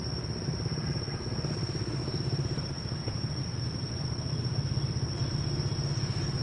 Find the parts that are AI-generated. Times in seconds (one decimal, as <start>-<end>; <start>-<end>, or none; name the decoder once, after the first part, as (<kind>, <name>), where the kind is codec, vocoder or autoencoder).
2.0-4.0 (vocoder, BigVGAN v2)